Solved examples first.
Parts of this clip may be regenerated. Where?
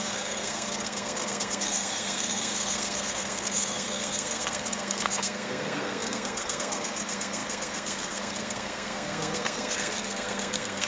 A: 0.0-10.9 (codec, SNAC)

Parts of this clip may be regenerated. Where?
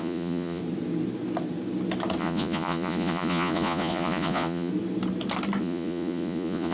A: 0.0-0.6 (vocoder, Vocos); 2.2-4.7; 5.6-6.7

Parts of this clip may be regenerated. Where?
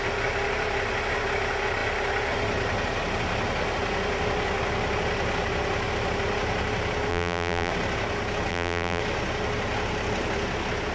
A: 7.1-7.7 (vocoder, BigVGAN v2); 8.5-9.0